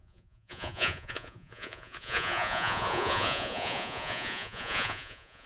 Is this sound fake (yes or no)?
yes